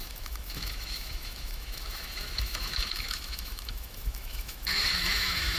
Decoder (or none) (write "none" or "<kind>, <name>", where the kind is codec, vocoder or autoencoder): autoencoder, DAC-VAE